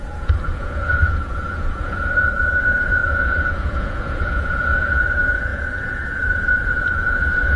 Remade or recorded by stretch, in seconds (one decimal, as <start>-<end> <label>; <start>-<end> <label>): 0.0-7.6 remade